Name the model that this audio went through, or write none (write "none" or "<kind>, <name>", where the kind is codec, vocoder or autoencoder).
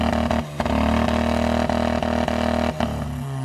none